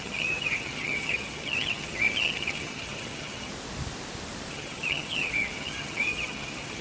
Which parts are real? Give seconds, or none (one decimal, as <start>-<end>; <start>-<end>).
3.5-4.5